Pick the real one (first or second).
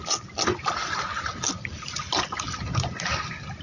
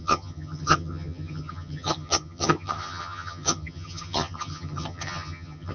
first